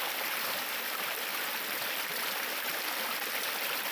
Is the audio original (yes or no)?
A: yes